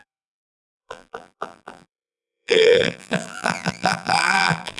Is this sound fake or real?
fake